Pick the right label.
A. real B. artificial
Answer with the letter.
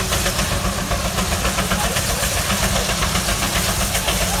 A